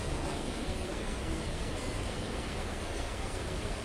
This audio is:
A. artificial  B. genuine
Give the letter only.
A